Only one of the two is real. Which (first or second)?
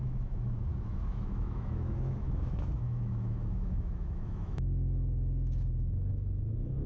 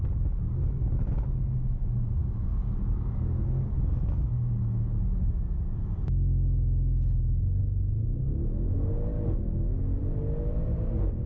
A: second